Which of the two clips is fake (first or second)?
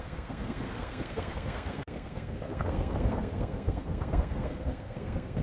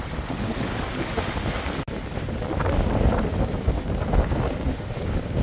first